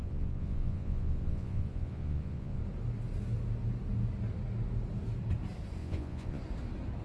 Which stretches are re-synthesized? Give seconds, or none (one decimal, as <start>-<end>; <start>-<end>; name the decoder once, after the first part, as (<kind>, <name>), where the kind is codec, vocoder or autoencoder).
0.0-2.6 (vocoder, Vocos); 5.8-6.4

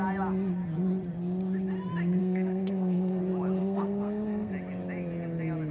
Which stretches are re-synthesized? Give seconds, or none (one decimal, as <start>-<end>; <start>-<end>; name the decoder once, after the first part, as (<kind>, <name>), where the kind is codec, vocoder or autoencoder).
2.2-3.2 (codec, SNAC); 3.6-4.5